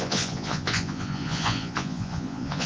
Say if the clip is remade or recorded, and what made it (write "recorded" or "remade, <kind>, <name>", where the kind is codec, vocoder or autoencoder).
remade, vocoder, Vocos